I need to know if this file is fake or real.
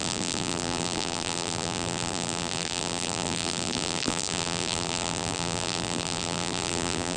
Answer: fake